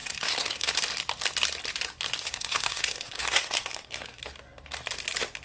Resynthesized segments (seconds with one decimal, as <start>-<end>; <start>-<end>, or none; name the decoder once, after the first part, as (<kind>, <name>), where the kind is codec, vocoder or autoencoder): 0.0-0.7 (codec, SNAC); 2.2-4.2